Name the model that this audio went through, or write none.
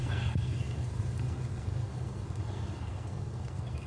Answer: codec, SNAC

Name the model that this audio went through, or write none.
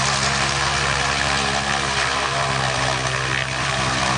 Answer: vocoder, BigVGAN v2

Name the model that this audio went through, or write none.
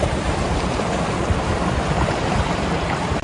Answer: vocoder, BigVGAN v2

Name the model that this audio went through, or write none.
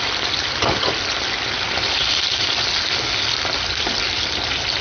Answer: none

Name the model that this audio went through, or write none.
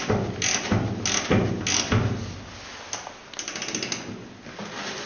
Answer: none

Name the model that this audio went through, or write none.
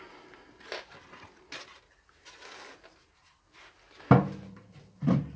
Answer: none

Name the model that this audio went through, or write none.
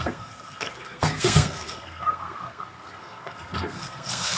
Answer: codec, SNAC